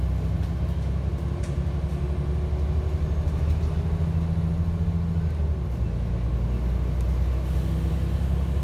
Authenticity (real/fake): real